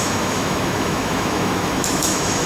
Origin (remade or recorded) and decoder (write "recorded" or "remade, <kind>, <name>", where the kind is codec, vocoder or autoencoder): remade, autoencoder, DAC-VAE